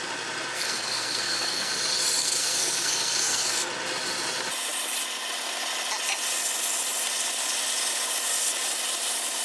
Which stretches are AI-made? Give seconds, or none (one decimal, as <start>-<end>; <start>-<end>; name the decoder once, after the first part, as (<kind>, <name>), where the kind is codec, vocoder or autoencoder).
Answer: 0.5-1.7 (codec, SNAC); 2.2-3.7